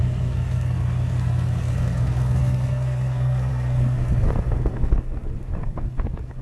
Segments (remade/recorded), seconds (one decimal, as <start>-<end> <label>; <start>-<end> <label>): 0.0-6.4 remade